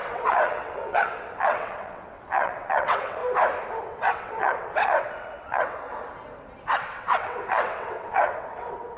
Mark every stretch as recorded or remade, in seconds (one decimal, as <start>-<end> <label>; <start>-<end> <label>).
0.0-3.2 remade; 3.2-3.8 recorded; 3.8-5.9 remade; 5.9-6.7 recorded; 6.7-9.0 remade

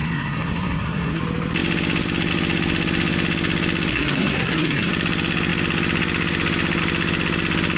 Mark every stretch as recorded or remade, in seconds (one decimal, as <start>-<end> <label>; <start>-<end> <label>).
0.0-1.2 remade; 1.2-3.9 recorded; 3.9-4.9 remade; 4.9-7.8 recorded

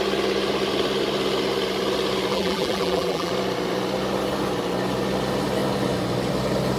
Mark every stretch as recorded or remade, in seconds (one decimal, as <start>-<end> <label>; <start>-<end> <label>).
0.0-2.3 recorded; 2.3-3.3 remade; 3.3-6.8 recorded

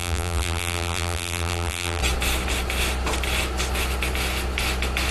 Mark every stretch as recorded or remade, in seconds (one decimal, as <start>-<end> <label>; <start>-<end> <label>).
0.0-2.0 remade; 2.0-5.1 recorded

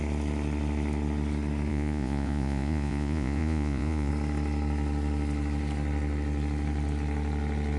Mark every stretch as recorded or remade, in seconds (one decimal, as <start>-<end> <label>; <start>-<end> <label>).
0.0-1.7 recorded; 1.7-4.1 remade; 4.1-7.8 recorded

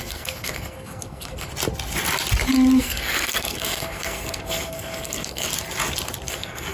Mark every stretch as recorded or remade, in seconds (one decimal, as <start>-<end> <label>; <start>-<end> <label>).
0.0-1.5 remade; 1.5-2.8 recorded; 2.8-5.5 remade; 5.5-6.3 recorded; 6.3-6.7 remade

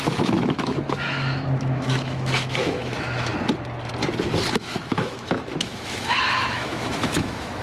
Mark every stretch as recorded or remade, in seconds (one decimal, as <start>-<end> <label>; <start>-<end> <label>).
0.0-3.3 remade; 3.3-4.5 recorded; 4.5-7.6 remade